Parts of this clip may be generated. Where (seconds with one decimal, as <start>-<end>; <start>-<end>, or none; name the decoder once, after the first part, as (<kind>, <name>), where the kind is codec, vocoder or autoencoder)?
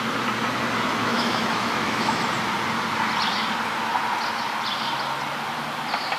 1.0-2.2 (autoencoder, DAC-VAE)